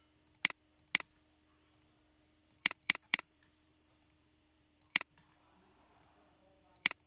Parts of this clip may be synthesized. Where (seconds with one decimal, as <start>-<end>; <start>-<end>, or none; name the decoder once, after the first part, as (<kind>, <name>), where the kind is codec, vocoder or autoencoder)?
2.4-7.1 (vocoder, BigVGAN v2)